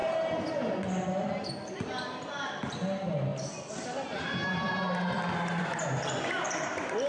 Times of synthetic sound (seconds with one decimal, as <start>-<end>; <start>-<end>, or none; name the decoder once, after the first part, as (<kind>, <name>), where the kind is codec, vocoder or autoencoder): none